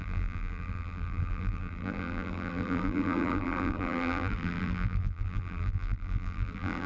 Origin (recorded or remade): remade